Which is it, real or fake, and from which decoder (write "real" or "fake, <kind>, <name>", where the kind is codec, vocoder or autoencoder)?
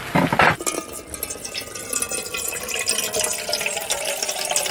real